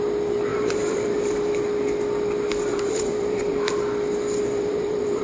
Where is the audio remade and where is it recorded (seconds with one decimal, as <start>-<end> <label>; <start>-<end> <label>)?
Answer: 0.0-0.5 recorded; 0.5-1.5 remade; 1.5-2.7 recorded; 2.7-3.7 remade; 3.7-4.4 recorded; 4.4-5.2 remade